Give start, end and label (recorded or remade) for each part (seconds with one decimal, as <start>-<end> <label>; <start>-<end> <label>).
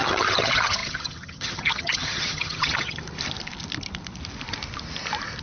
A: 0.0-3.0 remade; 3.0-5.4 recorded